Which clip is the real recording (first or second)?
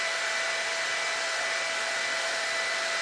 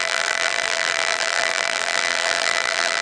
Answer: first